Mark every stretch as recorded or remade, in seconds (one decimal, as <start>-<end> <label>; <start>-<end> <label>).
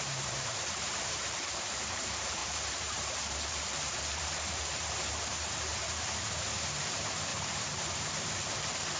0.0-5.7 remade; 5.7-6.8 recorded; 6.8-9.0 remade